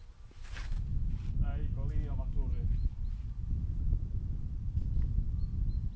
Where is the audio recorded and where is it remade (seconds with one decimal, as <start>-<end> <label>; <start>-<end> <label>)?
0.0-6.0 recorded